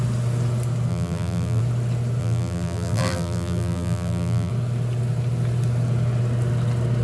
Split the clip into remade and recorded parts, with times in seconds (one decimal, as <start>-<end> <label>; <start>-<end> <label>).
0.0-0.9 recorded; 0.9-1.6 remade; 1.6-2.2 recorded; 2.2-4.5 remade; 4.5-7.0 recorded